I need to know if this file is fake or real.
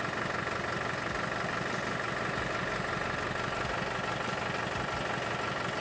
real